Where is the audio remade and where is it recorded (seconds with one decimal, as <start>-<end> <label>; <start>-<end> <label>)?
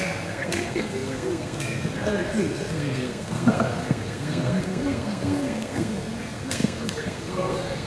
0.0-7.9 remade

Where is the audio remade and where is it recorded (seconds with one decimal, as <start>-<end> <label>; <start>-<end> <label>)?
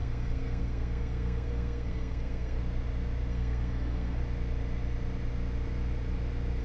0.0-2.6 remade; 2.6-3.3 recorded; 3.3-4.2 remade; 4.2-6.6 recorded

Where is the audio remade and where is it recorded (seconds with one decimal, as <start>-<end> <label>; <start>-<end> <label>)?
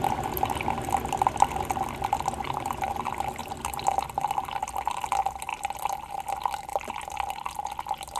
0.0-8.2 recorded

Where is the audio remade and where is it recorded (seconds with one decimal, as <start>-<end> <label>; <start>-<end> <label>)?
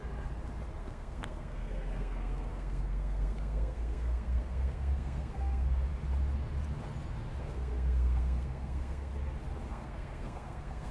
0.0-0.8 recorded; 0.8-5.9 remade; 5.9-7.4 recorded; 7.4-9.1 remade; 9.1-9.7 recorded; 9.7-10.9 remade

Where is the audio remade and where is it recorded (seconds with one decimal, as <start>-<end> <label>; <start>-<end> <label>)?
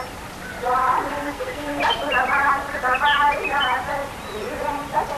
0.0-1.1 recorded; 1.1-1.8 remade; 1.8-5.2 recorded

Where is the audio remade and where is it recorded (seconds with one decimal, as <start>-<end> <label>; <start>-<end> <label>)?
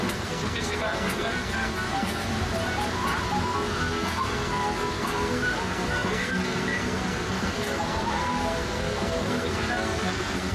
0.0-2.3 remade; 2.3-3.4 recorded; 3.4-10.5 remade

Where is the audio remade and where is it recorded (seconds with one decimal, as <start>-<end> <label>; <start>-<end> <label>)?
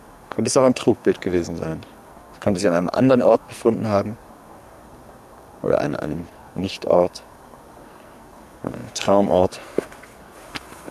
0.0-10.9 remade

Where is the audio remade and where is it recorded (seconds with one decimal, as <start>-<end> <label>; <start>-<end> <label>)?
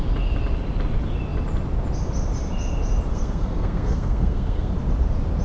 0.0-3.1 recorded; 3.1-4.7 remade; 4.7-5.4 recorded